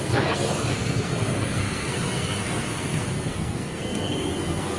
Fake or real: fake